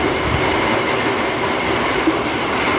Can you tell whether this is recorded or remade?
recorded